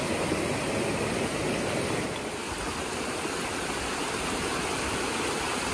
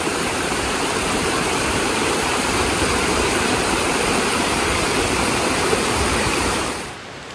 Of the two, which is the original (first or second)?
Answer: first